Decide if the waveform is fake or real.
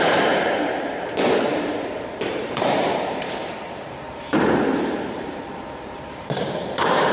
fake